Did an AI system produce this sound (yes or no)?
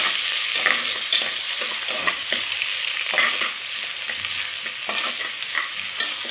no